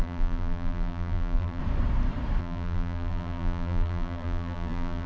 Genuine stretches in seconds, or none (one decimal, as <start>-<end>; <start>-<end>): 1.6-2.4